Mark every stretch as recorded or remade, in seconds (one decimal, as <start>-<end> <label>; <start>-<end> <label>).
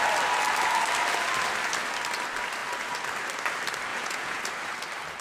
0.0-3.9 recorded; 3.9-4.4 remade; 4.4-5.2 recorded